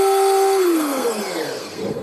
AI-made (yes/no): yes